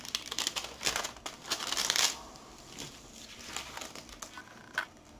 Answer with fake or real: real